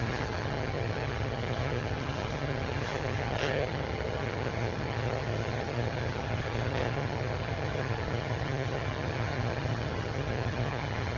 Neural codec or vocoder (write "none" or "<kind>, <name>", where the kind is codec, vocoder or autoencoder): vocoder, HiFi-GAN